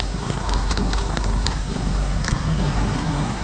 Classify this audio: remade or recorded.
remade